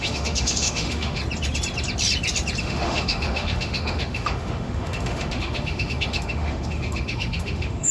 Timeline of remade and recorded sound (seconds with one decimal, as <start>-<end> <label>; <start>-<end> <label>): 0.0-1.2 remade; 1.2-2.6 recorded; 2.6-7.9 remade